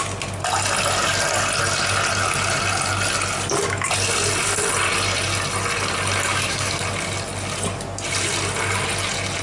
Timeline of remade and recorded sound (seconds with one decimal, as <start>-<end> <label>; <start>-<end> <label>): 0.0-6.3 recorded; 6.3-6.8 remade; 6.8-9.4 recorded